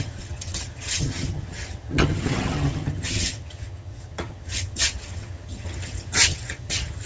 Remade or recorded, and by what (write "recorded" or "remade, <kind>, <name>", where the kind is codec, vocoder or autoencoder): remade, vocoder, HiFi-GAN